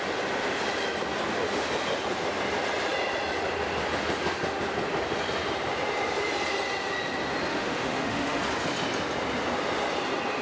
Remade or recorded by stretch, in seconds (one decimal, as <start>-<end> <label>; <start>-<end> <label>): 0.0-7.5 recorded; 7.5-8.4 remade; 8.4-10.4 recorded

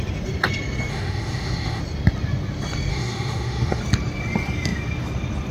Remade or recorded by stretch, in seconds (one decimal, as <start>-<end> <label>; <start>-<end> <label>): 0.0-0.9 recorded; 0.9-1.8 remade; 1.8-2.9 recorded; 2.9-3.8 remade; 3.8-5.5 recorded

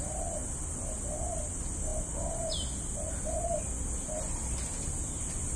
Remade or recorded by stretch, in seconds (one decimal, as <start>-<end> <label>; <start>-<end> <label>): 0.0-5.6 recorded

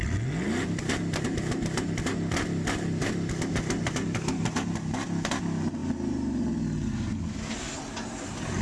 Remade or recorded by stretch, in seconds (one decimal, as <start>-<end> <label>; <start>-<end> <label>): 0.0-8.6 recorded